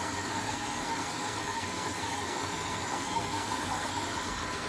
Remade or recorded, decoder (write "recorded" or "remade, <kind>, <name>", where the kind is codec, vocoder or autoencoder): remade, codec, SNAC